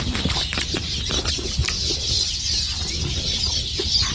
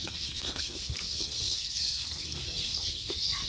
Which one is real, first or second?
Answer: first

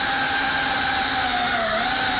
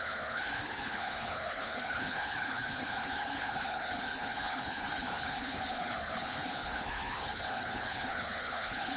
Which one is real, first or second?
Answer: first